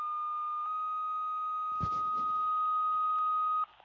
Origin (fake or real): real